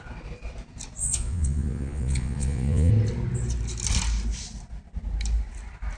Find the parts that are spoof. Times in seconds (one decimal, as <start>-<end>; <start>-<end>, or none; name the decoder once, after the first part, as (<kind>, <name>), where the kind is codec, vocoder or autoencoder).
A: 1.0-2.9 (vocoder, Vocos)